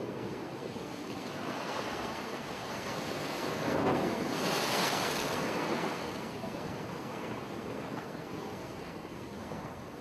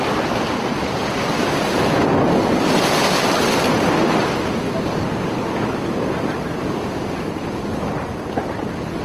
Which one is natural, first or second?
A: second